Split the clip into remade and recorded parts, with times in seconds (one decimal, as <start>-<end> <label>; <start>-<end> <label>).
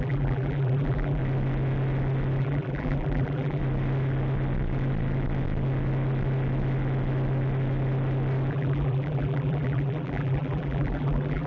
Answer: 0.0-1.2 remade; 1.2-2.4 recorded; 2.4-3.6 remade; 3.6-8.5 recorded; 8.5-11.5 remade